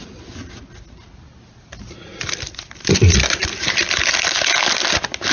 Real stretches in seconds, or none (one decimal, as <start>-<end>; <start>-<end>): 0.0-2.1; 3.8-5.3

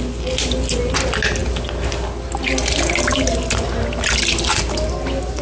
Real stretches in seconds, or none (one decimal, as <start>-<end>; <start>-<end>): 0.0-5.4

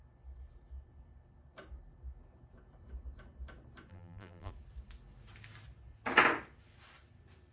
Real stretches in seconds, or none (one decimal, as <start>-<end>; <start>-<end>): 0.0-3.9; 4.5-7.5